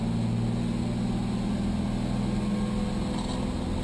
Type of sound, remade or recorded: recorded